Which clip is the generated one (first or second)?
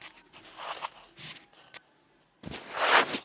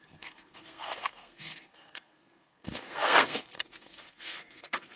second